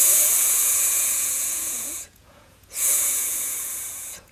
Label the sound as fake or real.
fake